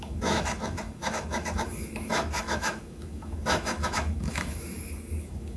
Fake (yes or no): yes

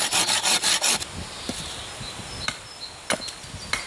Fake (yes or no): no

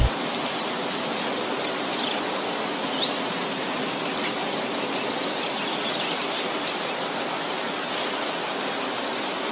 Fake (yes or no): no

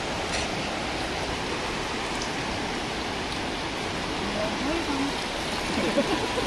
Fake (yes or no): no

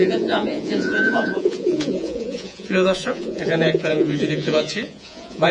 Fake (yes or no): yes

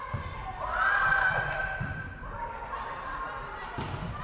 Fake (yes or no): yes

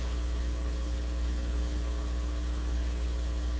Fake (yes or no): yes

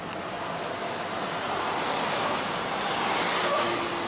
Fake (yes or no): no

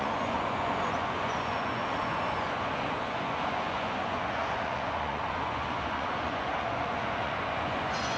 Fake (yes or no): yes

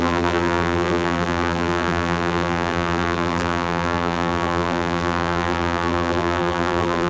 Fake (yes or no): yes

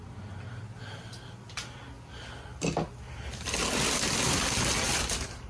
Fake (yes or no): no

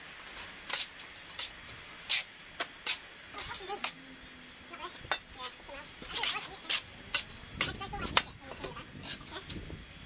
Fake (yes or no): no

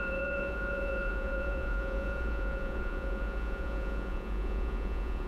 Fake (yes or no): yes